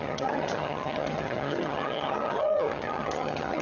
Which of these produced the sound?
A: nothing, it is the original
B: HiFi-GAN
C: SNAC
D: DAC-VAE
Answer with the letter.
B